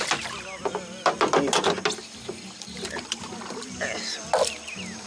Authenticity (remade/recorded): recorded